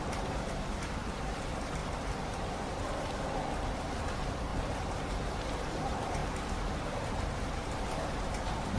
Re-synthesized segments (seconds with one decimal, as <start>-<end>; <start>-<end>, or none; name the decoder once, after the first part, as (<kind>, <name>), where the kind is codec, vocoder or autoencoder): 0.0-1.8 (vocoder, BigVGAN v2); 4.0-4.5; 5.6-8.8